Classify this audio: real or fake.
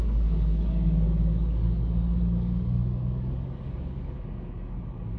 fake